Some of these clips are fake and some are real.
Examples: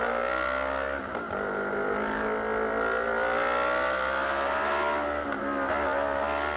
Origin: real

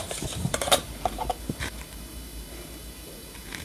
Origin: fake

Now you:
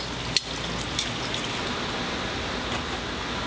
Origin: real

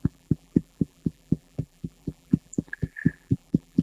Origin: fake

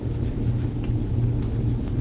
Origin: real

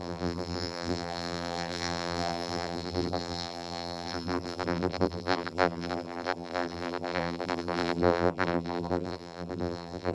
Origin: fake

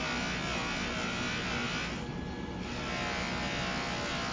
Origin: real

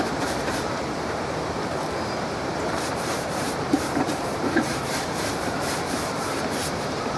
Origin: fake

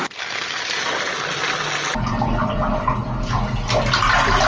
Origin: real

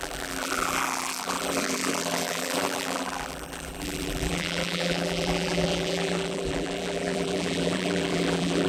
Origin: fake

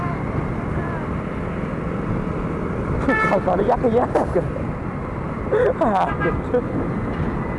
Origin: real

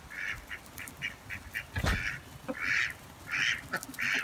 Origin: real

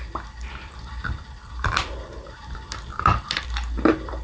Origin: fake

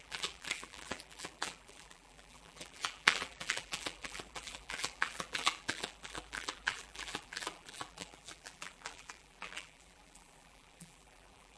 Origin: fake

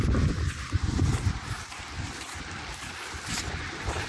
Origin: fake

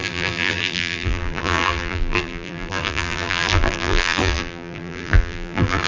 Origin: fake